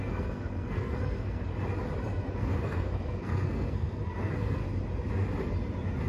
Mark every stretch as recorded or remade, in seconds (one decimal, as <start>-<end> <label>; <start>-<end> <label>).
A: 0.0-1.5 remade; 1.5-2.3 recorded; 2.3-4.6 remade; 4.6-6.1 recorded